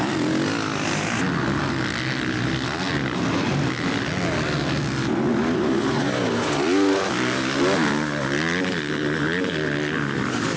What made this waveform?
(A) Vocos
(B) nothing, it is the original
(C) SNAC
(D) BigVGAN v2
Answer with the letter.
B